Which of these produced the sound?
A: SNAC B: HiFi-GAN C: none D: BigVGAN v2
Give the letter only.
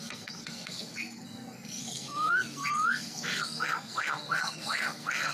A